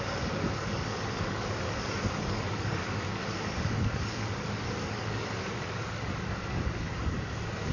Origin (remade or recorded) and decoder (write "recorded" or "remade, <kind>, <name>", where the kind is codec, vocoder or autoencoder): remade, codec, DAC